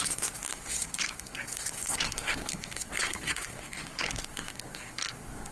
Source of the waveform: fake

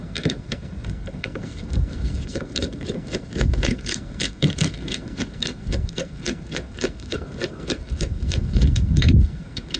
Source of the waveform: fake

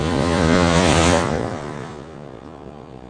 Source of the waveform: fake